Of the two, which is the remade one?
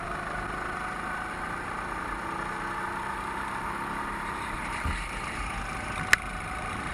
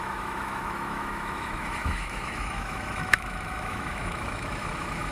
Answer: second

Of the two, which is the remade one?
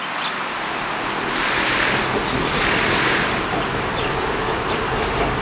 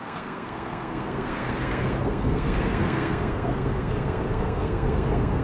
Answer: second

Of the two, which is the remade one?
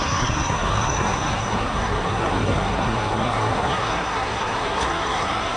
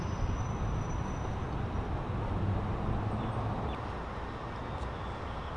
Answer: first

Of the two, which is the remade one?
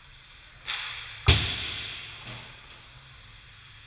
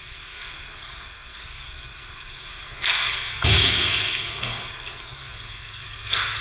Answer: second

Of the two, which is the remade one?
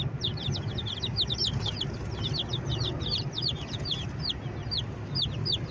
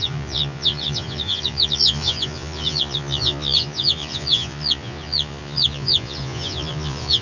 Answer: second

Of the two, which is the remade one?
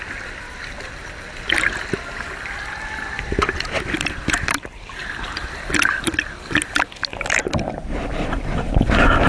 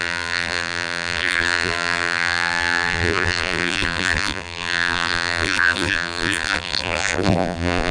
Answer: second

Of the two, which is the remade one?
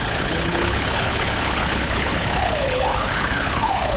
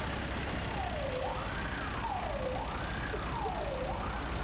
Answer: first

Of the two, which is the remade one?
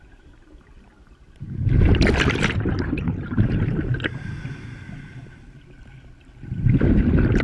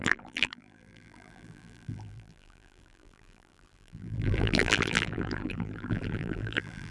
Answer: second